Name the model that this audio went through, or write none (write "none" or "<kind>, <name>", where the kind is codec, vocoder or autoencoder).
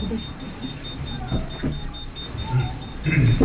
none